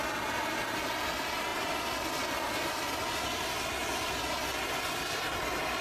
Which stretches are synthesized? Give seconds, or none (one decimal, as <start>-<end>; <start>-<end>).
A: none